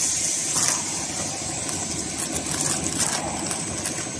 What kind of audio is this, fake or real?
real